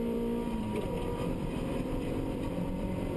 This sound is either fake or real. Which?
fake